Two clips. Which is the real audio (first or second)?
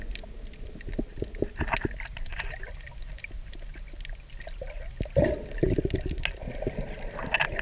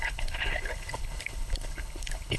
first